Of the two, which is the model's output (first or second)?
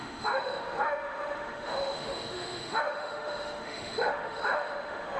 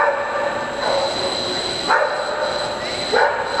first